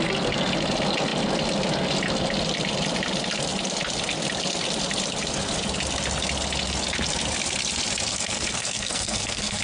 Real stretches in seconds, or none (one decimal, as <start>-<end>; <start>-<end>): 0.0-8.1